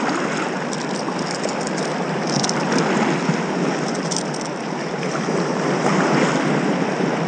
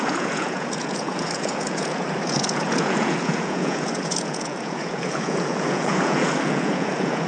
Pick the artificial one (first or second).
second